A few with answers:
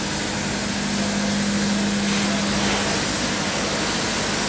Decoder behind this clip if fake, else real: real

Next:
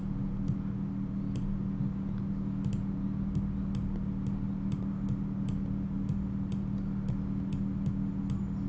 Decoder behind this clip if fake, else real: real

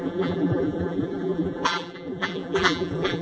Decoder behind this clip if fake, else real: fake, vocoder, BigVGAN v2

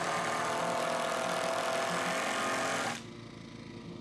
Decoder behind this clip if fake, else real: real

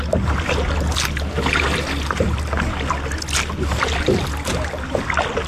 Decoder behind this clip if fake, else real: real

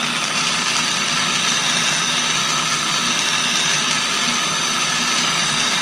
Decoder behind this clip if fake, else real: real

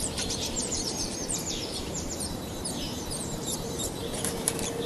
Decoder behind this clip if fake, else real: fake, vocoder, BigVGAN v2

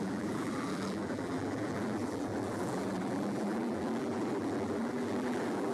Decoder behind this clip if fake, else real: fake, vocoder, BigVGAN v2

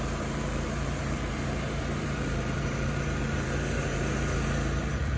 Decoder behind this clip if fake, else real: fake, vocoder, BigVGAN v2